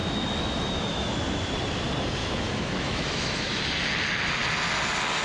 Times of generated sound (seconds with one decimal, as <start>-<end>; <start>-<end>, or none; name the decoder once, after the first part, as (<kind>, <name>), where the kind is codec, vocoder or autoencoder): 0.0-1.2 (autoencoder, DAC-VAE); 2.2-3.6